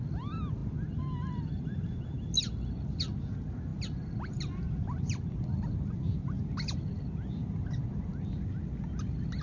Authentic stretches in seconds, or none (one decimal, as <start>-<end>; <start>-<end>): 0.0-9.4